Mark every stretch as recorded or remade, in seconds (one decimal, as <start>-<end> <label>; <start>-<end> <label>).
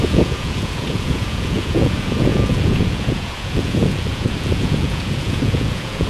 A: 0.0-6.1 remade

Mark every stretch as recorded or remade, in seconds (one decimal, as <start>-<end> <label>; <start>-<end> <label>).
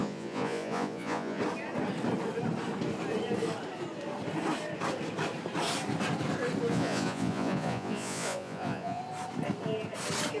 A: 0.0-1.4 remade; 1.4-6.7 recorded; 6.7-9.0 remade; 9.0-10.4 recorded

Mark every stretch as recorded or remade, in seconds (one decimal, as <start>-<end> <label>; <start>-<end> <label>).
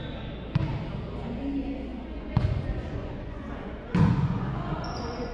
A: 0.0-1.9 recorded; 1.9-5.3 remade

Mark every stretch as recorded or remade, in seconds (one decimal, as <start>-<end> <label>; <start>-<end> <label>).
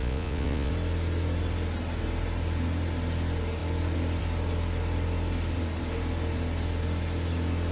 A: 0.0-0.7 remade; 0.7-7.7 recorded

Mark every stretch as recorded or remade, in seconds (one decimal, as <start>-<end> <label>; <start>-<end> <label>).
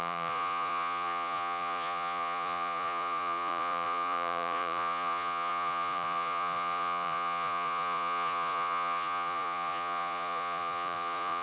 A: 0.0-11.4 remade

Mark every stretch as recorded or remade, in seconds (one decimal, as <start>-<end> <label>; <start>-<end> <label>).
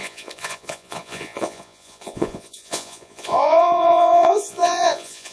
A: 0.0-5.3 remade